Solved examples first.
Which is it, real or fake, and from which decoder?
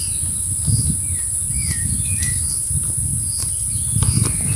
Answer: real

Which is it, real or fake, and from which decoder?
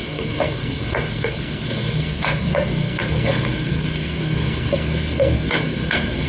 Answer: fake, codec, SNAC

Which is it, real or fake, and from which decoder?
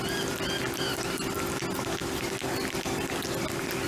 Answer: real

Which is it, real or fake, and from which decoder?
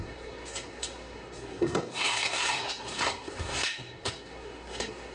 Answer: fake, codec, SNAC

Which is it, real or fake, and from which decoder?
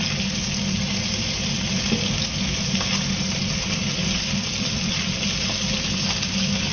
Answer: real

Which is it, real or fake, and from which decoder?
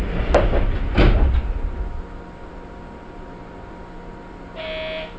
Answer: real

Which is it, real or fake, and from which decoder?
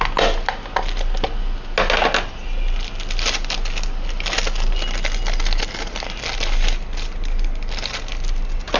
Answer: real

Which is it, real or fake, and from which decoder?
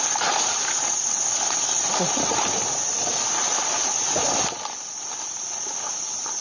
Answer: real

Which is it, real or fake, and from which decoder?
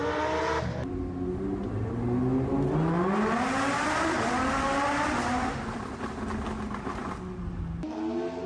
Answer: real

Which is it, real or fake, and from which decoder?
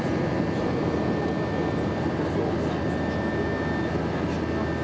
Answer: real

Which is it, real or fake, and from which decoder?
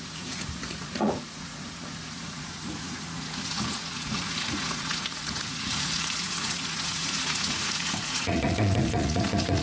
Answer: fake, vocoder, Vocos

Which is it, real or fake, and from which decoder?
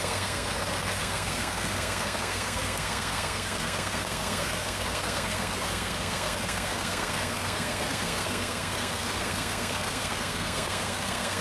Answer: fake, codec, SNAC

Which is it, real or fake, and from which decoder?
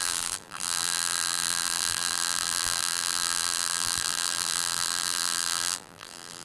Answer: fake, vocoder, BigVGAN v2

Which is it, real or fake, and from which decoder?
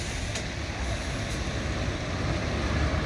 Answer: real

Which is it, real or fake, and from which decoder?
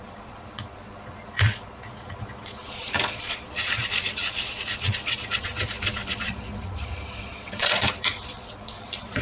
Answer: fake, vocoder, Vocos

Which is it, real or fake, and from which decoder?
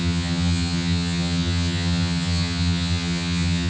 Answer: fake, vocoder, HiFi-GAN